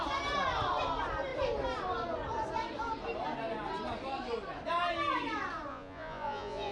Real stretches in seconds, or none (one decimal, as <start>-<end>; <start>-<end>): 0.0-5.7